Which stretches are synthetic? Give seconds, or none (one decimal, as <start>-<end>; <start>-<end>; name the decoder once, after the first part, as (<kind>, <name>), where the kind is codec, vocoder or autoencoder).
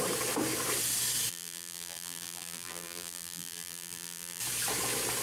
1.3-4.4 (vocoder, BigVGAN v2)